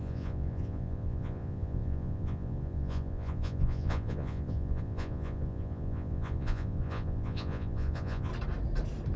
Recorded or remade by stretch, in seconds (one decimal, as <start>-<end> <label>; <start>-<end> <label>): 0.0-8.3 remade; 8.3-9.2 recorded